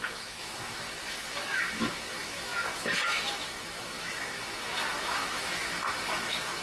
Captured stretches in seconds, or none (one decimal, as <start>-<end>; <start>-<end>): none